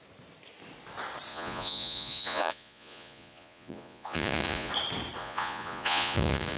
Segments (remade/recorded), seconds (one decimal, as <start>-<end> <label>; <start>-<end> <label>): 0.0-1.3 recorded; 1.3-4.7 remade; 4.7-5.2 recorded; 5.2-6.6 remade